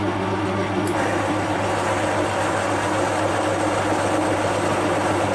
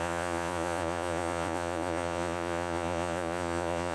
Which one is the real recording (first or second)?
first